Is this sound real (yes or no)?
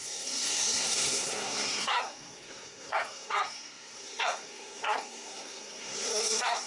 no